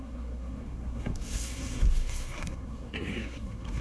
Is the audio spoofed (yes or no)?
yes